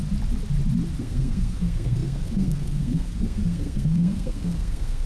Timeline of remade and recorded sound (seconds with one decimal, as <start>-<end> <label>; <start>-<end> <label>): 0.0-1.0 recorded; 1.0-5.1 remade